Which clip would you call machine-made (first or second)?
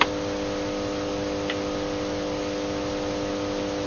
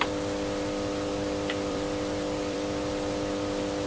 second